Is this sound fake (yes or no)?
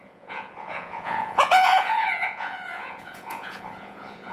yes